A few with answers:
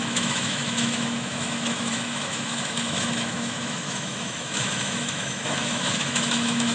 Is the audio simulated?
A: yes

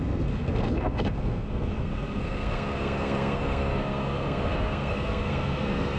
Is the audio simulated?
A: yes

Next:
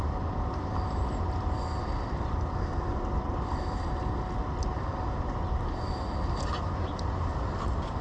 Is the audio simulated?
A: no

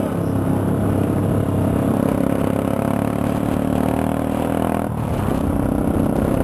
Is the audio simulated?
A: no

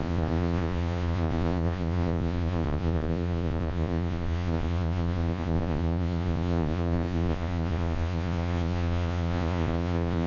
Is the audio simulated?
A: yes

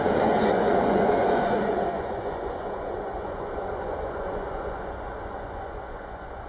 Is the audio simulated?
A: yes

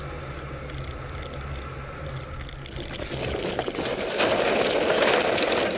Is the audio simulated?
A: no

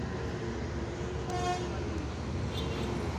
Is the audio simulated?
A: no